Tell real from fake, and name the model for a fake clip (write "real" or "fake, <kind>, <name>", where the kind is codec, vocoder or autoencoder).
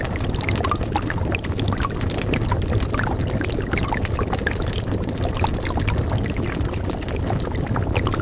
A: real